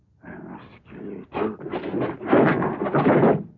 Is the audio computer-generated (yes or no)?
no